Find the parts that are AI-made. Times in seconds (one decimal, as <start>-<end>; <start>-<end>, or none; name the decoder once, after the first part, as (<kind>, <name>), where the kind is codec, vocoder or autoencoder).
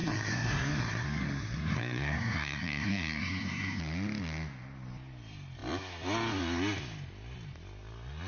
0.0-3.8 (codec, SNAC)